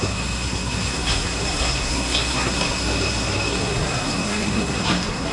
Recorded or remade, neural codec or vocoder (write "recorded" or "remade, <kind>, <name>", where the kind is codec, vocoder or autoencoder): remade, codec, SNAC